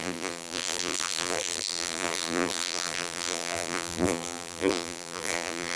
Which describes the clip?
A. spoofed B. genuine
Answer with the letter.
A